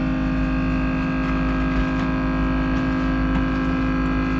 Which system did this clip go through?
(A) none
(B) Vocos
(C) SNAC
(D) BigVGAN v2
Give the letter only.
A